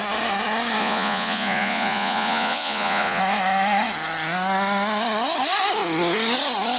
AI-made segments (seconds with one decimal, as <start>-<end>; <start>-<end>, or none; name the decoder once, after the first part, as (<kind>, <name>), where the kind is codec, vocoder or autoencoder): 0.8-3.2 (vocoder, Vocos)